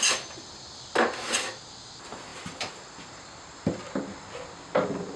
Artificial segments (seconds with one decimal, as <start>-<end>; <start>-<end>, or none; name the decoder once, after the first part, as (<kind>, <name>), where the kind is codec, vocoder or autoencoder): none